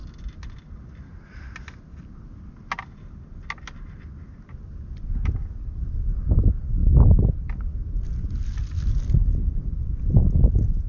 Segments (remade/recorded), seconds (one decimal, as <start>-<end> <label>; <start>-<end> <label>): 0.0-9.4 recorded; 9.4-10.0 remade; 10.0-10.9 recorded

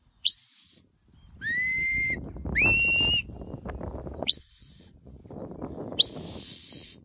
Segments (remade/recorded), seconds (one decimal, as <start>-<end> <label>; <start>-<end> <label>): 0.0-0.4 remade; 0.4-4.1 recorded; 4.1-5.2 remade; 5.2-6.4 recorded; 6.4-7.0 remade